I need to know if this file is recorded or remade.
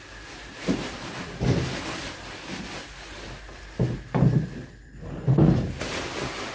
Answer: recorded